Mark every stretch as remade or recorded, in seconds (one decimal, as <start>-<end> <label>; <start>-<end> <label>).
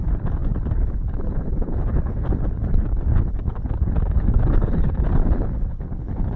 0.0-6.4 remade